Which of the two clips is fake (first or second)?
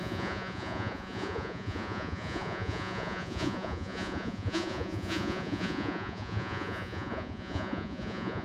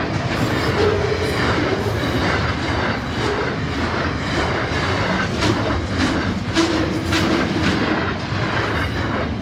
first